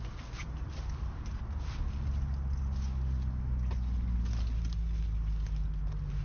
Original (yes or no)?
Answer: yes